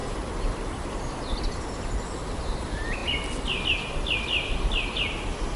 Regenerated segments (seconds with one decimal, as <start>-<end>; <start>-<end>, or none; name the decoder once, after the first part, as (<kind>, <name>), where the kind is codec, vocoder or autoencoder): 0.0-1.7 (vocoder, BigVGAN v2)